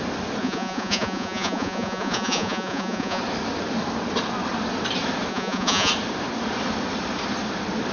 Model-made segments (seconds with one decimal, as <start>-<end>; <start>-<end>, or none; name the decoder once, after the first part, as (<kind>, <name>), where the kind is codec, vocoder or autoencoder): 0.4-3.2 (vocoder, Vocos); 5.3-5.9

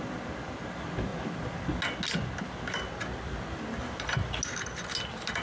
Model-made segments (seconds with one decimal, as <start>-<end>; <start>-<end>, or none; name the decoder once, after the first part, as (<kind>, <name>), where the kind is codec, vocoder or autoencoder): none

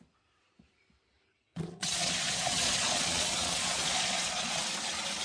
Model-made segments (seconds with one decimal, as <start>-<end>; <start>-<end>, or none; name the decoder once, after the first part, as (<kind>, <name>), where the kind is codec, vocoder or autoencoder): 1.5-4.6 (vocoder, Vocos)

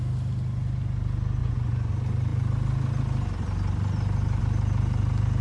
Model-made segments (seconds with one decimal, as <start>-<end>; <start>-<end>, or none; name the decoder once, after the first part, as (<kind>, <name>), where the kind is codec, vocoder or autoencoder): 1.4-1.9 (vocoder, Vocos)

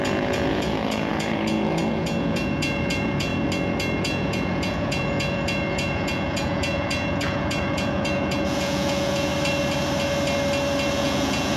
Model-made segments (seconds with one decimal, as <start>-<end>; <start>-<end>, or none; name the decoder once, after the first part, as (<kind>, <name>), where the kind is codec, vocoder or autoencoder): 0.0-3.3 (vocoder, Vocos); 4.0-9.3; 10.9-11.6

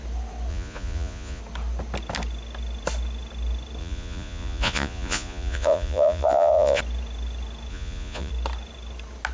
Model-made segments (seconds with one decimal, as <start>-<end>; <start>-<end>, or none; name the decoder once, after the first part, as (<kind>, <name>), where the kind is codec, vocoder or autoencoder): 0.5-1.4 (vocoder, Vocos); 3.8-6.8; 7.7-8.3

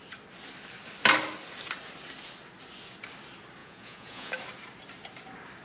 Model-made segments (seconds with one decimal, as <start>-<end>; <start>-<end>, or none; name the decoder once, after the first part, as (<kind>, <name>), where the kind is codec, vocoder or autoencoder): 3.6-4.3 (vocoder, Vocos)

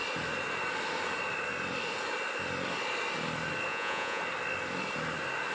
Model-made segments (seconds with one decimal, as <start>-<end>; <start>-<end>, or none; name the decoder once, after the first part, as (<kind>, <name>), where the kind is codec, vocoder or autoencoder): 3.7-4.2 (vocoder, Vocos)